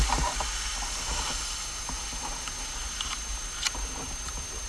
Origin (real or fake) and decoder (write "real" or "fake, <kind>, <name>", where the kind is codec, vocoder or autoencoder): real